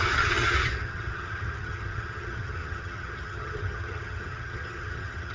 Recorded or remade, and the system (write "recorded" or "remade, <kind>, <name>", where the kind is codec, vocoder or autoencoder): remade, vocoder, HiFi-GAN